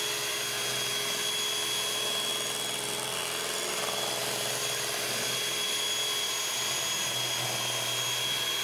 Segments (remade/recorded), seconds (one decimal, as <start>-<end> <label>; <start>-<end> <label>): 0.0-8.6 recorded